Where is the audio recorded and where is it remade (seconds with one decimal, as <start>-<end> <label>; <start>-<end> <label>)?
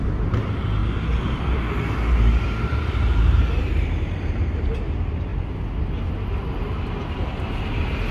0.0-0.8 remade; 0.8-2.1 recorded; 2.1-5.3 remade; 5.3-6.2 recorded; 6.2-8.1 remade